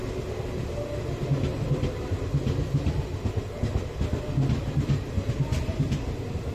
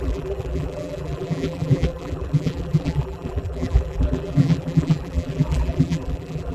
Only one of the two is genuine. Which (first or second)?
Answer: first